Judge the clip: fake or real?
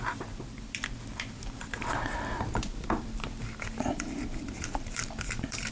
fake